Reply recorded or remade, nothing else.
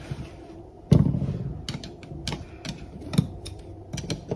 recorded